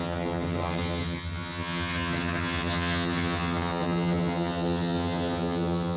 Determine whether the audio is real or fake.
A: fake